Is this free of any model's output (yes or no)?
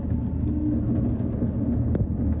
yes